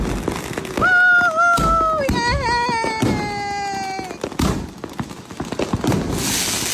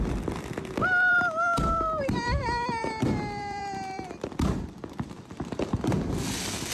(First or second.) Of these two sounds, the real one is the first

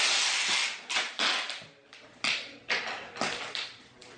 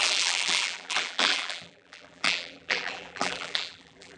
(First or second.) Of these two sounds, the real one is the first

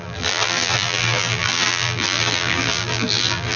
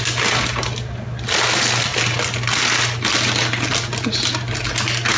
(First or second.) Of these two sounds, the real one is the second